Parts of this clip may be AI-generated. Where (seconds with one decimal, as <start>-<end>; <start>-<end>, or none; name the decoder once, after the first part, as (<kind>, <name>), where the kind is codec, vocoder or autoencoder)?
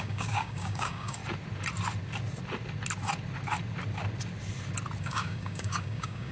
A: 0.0-1.2 (codec, DAC); 5.0-6.3